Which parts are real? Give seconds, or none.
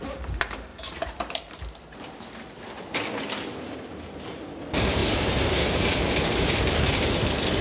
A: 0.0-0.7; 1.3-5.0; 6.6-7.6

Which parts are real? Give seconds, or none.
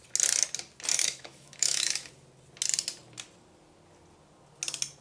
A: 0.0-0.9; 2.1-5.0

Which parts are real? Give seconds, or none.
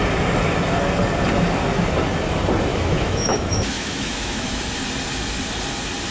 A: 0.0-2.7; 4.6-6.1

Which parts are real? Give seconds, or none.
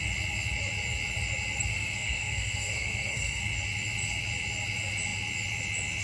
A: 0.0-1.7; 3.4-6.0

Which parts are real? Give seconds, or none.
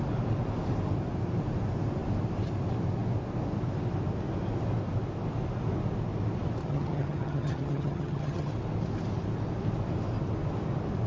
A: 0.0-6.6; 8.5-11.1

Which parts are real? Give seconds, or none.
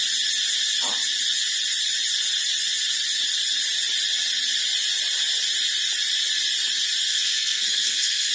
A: 0.0-7.1